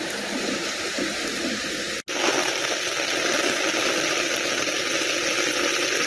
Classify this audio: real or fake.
real